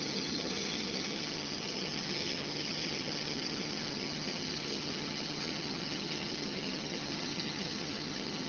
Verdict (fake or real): fake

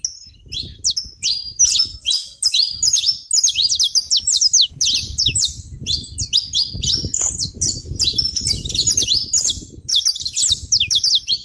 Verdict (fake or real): real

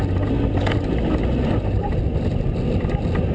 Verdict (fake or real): real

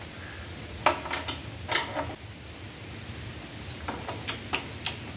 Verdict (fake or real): real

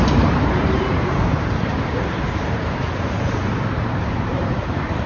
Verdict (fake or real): fake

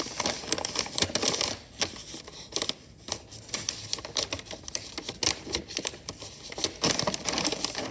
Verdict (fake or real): real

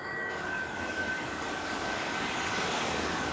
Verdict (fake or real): fake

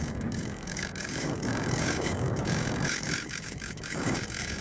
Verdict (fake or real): fake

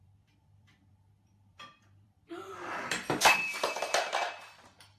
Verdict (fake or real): fake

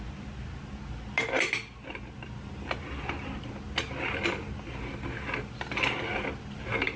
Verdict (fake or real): real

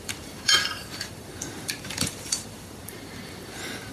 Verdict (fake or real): fake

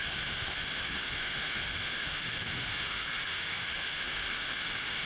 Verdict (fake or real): fake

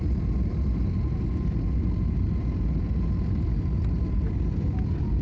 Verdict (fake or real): real